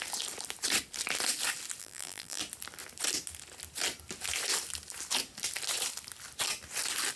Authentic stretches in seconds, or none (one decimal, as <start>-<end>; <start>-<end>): 0.0-1.8; 2.4-7.2